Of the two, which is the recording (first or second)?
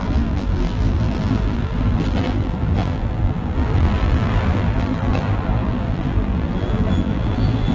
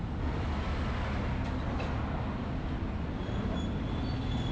second